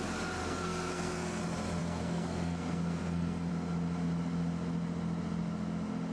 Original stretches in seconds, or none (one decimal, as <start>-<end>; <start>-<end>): 0.0-0.4; 1.4-1.8; 3.5-6.1